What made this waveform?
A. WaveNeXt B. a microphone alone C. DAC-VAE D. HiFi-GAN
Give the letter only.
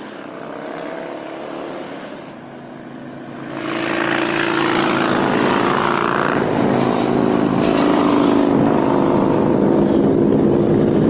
B